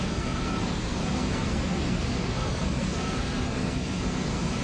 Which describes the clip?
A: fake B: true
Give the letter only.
A